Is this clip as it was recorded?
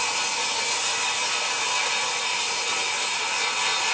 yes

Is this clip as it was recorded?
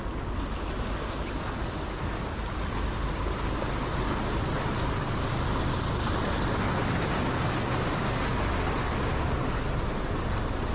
yes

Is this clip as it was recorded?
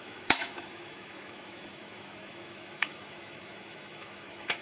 no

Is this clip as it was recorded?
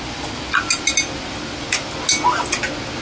yes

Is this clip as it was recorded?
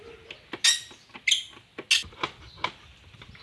yes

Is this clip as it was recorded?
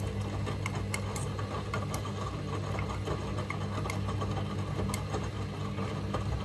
yes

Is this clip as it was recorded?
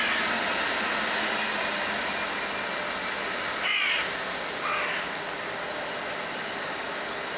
yes